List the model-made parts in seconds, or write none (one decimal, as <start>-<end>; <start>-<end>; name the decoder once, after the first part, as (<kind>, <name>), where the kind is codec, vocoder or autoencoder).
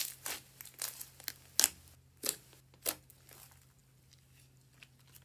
none